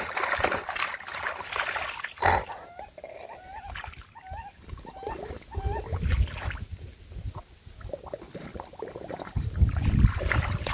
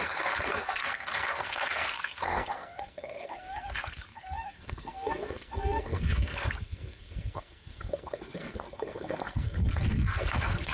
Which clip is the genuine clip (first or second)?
first